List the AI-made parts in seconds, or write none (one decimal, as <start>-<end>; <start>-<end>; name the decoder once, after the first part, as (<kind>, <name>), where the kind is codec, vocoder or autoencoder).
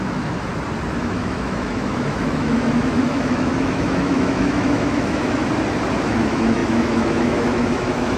0.0-0.5 (autoencoder, DAC-VAE); 1.0-5.4; 6.1-8.2